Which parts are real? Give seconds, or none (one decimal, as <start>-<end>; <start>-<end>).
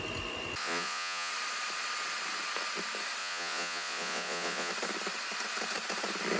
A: 0.0-0.6; 1.3-3.2; 4.7-6.4